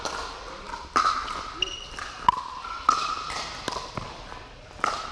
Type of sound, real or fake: real